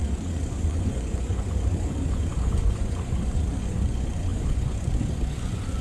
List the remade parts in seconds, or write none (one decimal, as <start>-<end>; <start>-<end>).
0.0-5.8